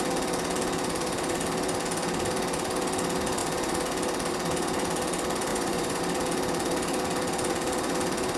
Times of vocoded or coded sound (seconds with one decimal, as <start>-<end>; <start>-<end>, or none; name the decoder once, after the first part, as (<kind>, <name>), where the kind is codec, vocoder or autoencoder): 5.5-6.0 (vocoder, Vocos)